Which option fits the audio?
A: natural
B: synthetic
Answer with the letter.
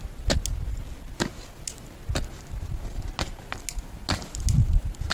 A